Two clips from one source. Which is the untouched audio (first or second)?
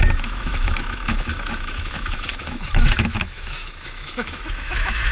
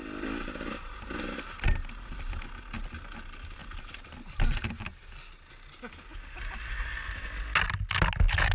second